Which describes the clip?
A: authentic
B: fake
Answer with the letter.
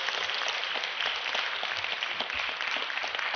A